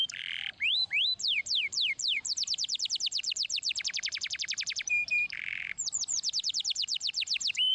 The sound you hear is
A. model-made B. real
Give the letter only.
A